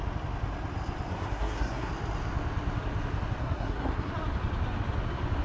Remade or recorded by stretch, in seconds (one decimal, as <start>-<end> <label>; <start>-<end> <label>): 0.0-1.1 recorded; 1.1-1.9 remade; 1.9-3.4 recorded; 3.4-4.1 remade; 4.1-5.4 recorded